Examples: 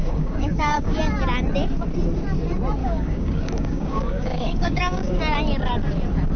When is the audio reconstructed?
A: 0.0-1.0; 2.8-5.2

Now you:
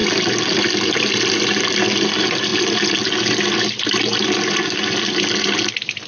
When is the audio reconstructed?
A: none

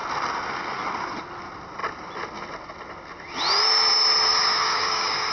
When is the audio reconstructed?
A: 4.3-5.3